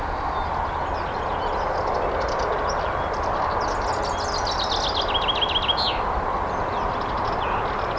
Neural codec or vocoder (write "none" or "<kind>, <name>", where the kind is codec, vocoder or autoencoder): none